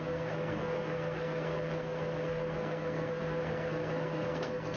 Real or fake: fake